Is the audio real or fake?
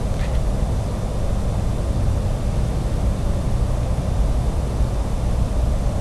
real